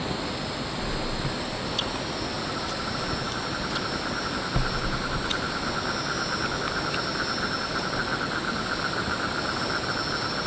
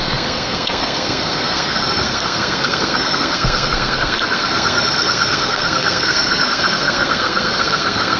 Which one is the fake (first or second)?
second